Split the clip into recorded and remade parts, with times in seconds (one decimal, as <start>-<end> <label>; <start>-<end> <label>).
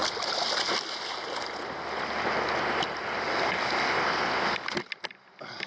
0.0-5.7 recorded